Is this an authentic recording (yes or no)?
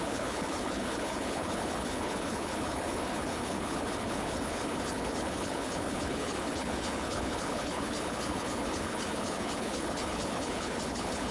no